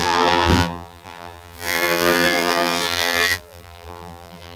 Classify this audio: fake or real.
fake